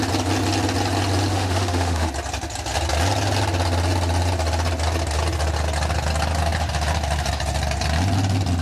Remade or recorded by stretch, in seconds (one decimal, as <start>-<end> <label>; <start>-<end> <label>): 0.0-1.3 recorded; 1.3-2.1 remade; 2.1-8.6 recorded